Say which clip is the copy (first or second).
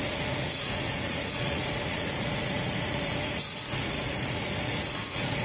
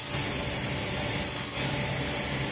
first